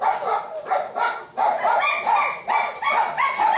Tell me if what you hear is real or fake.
real